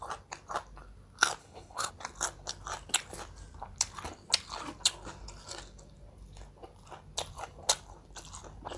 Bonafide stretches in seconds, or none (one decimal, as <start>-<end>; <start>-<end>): 0.0-1.4; 1.9-8.8